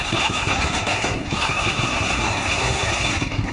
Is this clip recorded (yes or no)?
no